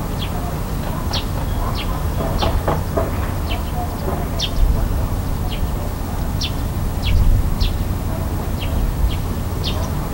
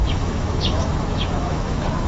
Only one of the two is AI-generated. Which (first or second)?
second